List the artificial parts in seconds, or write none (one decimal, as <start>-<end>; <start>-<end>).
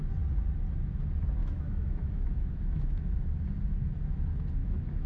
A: 1.4-3.3; 4.6-5.1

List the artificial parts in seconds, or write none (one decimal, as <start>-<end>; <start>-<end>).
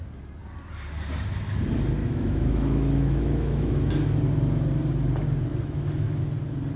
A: 2.0-3.9; 5.5-6.2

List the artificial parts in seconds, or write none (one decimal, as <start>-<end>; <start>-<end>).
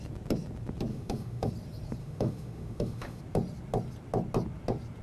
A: 0.9-1.5; 2.0-3.2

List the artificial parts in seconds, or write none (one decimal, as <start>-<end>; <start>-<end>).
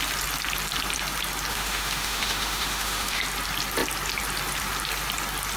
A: 1.5-3.2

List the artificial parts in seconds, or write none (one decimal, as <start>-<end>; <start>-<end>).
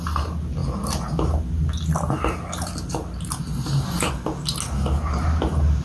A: none